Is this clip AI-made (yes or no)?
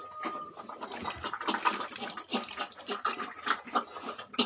no